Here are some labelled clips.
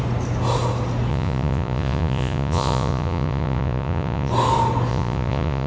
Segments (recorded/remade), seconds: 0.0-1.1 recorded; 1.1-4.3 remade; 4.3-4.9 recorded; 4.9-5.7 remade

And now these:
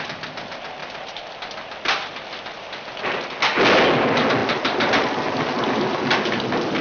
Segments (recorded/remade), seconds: 0.0-6.8 recorded